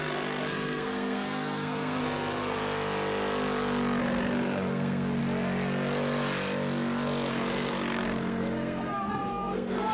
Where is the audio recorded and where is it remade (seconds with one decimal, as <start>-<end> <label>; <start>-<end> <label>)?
0.0-2.6 remade; 2.6-4.0 recorded; 4.0-5.2 remade; 5.2-7.3 recorded; 7.3-9.9 remade